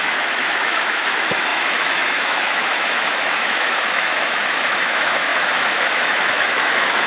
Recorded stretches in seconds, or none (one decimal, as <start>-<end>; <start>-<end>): none